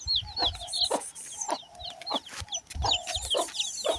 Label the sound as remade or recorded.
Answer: recorded